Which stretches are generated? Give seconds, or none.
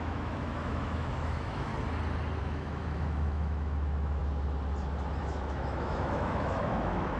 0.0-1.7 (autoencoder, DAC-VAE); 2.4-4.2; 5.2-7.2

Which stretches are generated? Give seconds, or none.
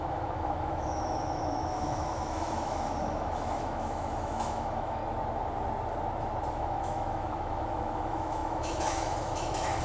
0.0-5.0 (autoencoder, DAC-VAE); 6.5-9.8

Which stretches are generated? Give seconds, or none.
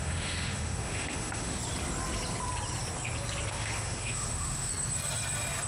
0.0-1.6 (autoencoder, DAC-VAE); 3.5-4.7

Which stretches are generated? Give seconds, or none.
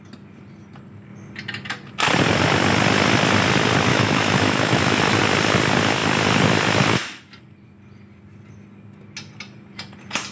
3.9-5.2 (autoencoder, DAC-VAE)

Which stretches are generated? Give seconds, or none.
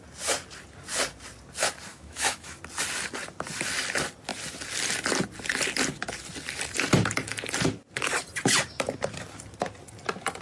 1.9-2.6 (autoencoder, DAC-VAE)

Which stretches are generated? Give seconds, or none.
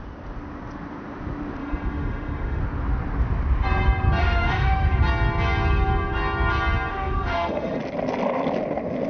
1.6-2.6 (autoencoder, DAC-VAE); 4.2-5.0; 6.9-7.8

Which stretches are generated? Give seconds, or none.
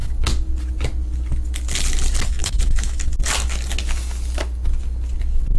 2.4-3.0 (autoencoder, DAC-VAE)